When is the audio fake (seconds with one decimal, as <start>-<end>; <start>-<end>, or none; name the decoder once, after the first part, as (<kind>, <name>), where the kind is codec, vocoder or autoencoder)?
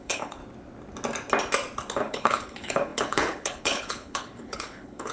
0.0-0.4 (codec, HILCodec); 1.9-5.1